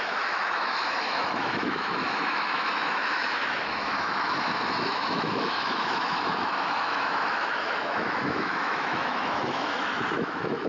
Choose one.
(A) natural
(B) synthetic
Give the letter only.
B